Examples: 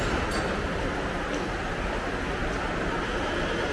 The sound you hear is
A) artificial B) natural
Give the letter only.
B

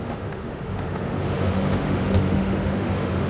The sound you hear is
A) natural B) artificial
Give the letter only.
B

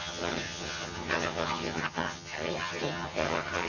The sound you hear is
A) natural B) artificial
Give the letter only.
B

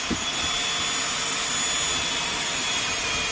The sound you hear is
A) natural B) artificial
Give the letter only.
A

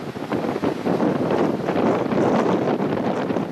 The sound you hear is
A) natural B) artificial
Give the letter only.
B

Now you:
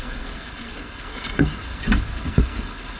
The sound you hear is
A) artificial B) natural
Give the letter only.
A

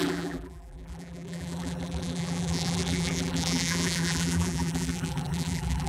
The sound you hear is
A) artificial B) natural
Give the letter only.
A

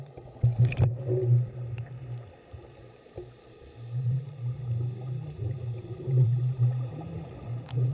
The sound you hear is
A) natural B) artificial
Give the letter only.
B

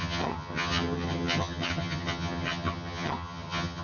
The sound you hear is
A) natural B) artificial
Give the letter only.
B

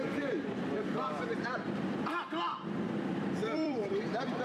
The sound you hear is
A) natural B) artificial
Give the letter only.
B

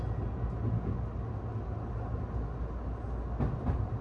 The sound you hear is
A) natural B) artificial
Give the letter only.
A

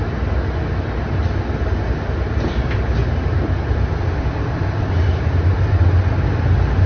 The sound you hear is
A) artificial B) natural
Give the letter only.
B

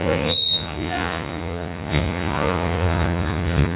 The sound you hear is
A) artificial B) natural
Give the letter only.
A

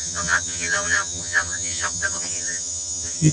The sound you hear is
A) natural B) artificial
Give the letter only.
B